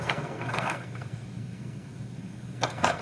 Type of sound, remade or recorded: remade